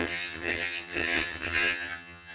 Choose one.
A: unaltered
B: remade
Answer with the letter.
B